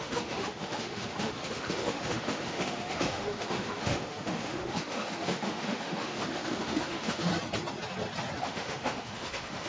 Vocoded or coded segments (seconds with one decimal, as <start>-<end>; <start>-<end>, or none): 0.0-7.3; 8.4-9.7